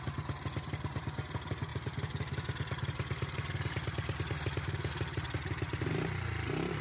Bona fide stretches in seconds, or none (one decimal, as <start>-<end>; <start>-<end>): 0.0-6.8

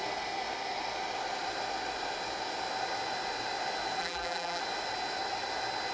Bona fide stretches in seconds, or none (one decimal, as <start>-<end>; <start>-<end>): 0.0-4.0; 4.6-5.9